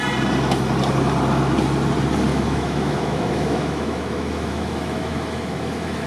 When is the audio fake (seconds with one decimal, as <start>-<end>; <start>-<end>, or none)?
2.3-6.1